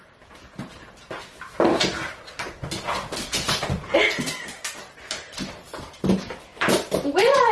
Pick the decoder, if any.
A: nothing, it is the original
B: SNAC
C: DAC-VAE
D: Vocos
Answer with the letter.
A